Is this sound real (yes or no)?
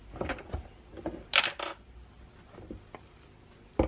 yes